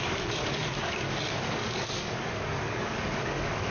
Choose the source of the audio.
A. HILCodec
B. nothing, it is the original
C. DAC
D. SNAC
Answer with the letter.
C